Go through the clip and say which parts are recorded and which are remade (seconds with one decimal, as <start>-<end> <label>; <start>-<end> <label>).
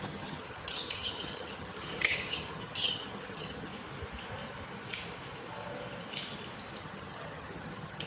0.0-3.7 remade; 3.7-6.8 recorded; 6.8-8.1 remade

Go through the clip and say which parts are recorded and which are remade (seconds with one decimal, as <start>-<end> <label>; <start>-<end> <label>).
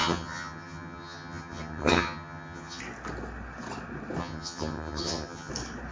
0.0-2.8 remade; 2.8-4.2 recorded; 4.2-5.5 remade; 5.5-5.9 recorded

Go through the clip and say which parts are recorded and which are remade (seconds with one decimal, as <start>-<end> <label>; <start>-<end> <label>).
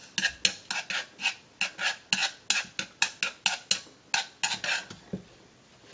0.0-5.9 recorded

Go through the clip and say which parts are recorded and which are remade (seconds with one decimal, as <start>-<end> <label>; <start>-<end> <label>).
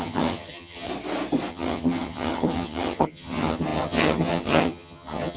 0.0-0.9 remade; 0.9-1.5 recorded; 1.5-5.4 remade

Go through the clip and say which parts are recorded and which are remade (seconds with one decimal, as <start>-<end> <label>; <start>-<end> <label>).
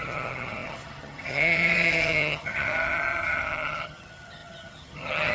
0.0-5.3 remade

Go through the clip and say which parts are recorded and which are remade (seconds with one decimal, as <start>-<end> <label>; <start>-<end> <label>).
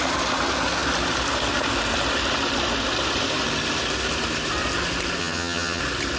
0.0-5.2 recorded; 5.2-5.8 remade; 5.8-6.2 recorded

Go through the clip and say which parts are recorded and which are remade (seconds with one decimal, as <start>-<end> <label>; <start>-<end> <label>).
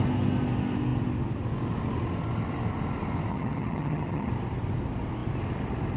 0.0-3.3 recorded; 3.3-4.3 remade; 4.3-6.0 recorded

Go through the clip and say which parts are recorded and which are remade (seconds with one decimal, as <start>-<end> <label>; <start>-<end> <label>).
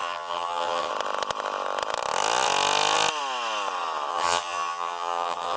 0.0-0.9 remade; 0.9-4.1 recorded; 4.1-5.6 remade